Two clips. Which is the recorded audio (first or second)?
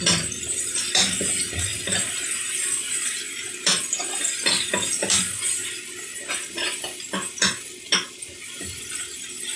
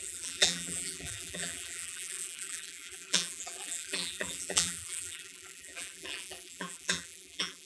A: first